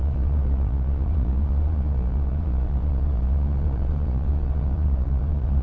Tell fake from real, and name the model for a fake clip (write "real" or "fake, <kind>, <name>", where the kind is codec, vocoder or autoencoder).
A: fake, vocoder, Vocos